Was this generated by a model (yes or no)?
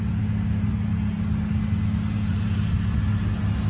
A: no